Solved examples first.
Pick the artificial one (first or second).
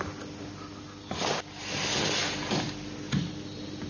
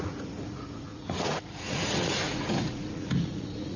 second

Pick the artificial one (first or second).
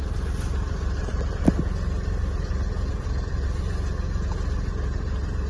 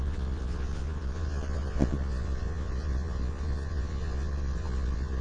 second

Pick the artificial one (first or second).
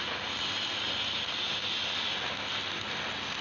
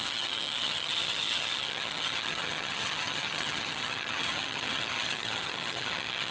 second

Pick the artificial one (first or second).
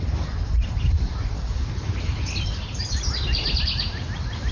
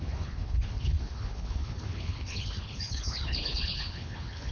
second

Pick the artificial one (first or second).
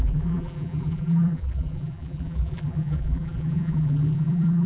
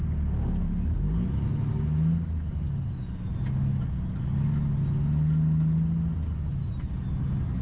first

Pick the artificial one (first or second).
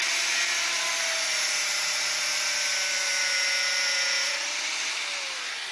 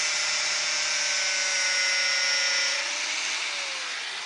first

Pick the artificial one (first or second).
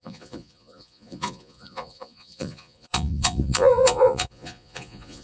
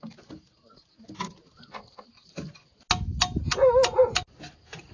first